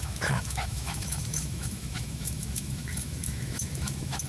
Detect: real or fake fake